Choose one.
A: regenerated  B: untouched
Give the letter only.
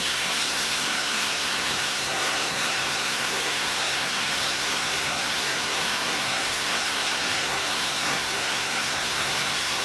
A